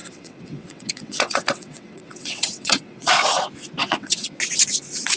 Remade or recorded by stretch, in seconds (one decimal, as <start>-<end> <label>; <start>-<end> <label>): 0.0-3.1 remade; 3.1-3.8 recorded; 3.8-4.4 remade; 4.4-5.2 recorded